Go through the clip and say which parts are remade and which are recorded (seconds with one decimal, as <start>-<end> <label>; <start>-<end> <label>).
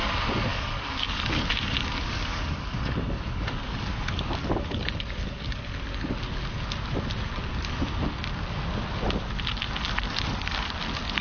0.0-0.5 recorded; 0.5-5.6 remade; 5.6-11.2 recorded